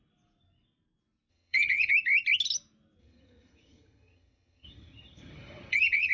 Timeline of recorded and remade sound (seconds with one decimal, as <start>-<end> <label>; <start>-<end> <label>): 0.0-1.3 recorded; 1.3-1.9 remade; 1.9-3.0 recorded; 3.0-6.1 remade